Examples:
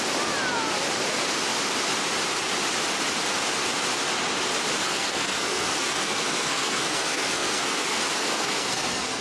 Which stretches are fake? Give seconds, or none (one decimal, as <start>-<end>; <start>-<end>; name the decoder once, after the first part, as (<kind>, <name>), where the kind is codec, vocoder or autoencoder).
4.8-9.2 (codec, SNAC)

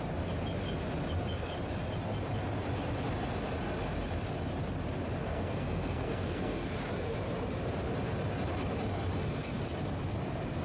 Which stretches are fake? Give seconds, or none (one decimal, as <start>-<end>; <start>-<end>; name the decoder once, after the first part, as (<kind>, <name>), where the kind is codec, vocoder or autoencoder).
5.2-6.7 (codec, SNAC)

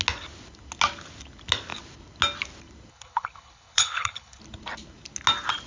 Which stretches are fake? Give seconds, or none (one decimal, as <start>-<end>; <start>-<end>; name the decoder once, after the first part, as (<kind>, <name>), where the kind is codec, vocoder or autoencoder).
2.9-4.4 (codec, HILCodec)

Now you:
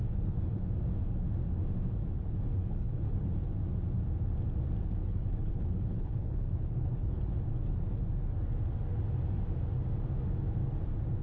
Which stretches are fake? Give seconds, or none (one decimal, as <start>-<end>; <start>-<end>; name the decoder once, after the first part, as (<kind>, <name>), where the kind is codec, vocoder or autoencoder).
0.0-0.7 (codec, HILCodec); 2.6-3.3; 5.0-7.4

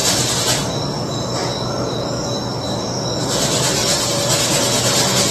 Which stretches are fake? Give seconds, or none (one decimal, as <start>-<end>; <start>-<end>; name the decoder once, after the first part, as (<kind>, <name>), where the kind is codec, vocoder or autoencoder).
0.7-1.4 (vocoder, BigVGAN v2); 2.5-3.8

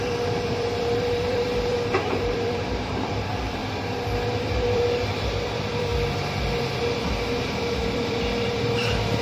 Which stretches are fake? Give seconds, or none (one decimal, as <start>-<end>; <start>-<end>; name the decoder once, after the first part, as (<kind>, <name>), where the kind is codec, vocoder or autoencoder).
0.0-3.6 (vocoder, BigVGAN v2); 4.3-5.9; 6.8-9.2

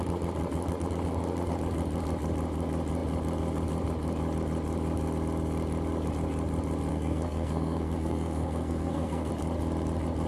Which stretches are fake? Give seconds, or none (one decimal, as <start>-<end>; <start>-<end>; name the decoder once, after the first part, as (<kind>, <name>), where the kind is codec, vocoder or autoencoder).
6.9-9.3 (codec, SNAC)

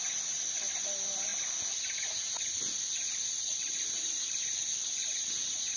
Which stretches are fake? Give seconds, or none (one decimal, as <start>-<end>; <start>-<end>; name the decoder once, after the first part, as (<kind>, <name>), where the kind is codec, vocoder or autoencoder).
none